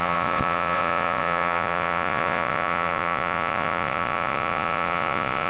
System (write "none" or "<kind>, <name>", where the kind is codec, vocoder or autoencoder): vocoder, Vocos